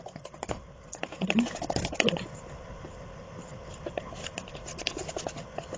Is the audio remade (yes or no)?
no